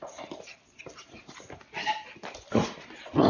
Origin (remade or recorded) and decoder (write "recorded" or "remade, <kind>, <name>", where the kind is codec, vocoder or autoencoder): recorded